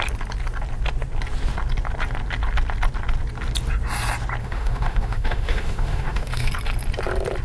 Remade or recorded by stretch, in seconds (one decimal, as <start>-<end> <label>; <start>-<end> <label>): 0.0-4.4 recorded; 4.4-6.5 remade; 6.5-7.4 recorded